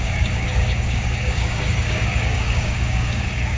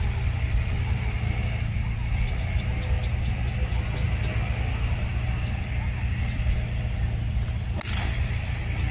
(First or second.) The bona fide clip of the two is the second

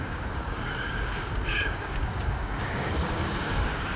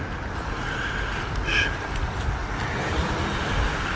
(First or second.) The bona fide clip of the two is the second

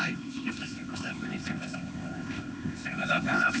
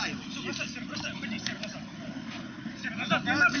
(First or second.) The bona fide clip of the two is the second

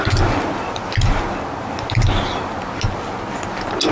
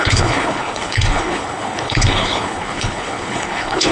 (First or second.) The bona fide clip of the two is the first